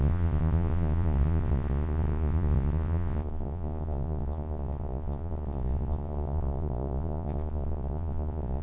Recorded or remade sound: remade